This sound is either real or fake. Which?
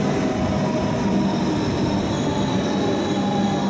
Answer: real